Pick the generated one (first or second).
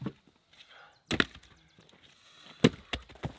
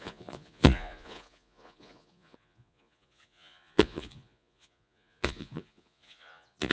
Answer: second